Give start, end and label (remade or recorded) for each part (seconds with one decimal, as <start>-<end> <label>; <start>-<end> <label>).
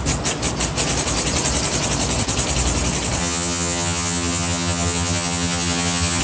0.0-3.2 recorded; 3.2-6.2 remade